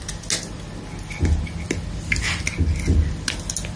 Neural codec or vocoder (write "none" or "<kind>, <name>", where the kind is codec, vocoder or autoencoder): none